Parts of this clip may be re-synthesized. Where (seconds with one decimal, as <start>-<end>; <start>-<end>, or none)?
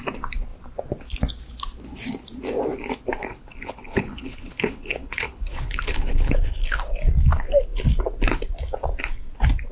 3.2-6.8